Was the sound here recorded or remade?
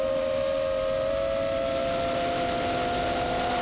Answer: recorded